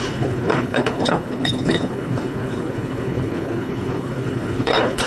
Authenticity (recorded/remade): remade